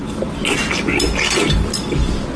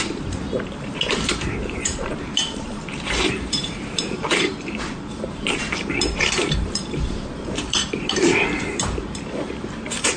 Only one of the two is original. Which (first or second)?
first